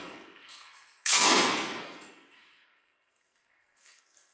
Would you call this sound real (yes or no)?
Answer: no